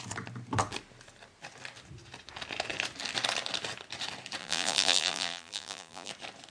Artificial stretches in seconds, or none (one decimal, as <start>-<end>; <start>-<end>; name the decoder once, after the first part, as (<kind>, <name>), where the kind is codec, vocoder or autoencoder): 4.4-6.1 (vocoder, BigVGAN v2)